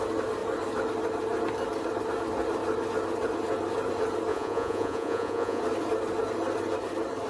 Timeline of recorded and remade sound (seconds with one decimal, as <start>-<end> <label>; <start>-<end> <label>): 0.0-4.3 recorded; 4.3-5.6 remade; 5.6-7.3 recorded